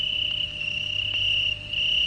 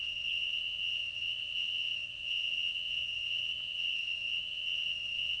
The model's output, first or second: second